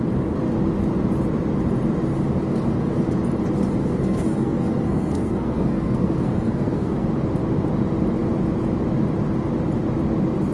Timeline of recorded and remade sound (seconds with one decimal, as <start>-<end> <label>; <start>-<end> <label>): 0.0-3.8 recorded; 3.8-7.1 remade; 7.1-10.5 recorded